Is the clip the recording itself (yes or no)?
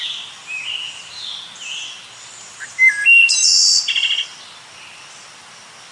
yes